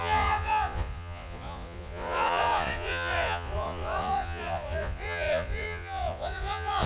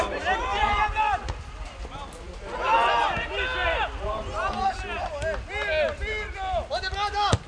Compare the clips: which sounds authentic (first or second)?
second